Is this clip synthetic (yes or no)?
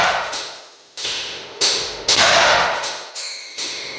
yes